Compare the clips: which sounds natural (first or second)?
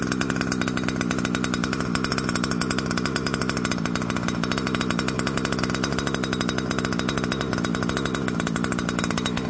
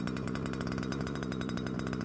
first